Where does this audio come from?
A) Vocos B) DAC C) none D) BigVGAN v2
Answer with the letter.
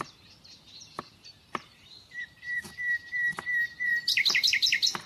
D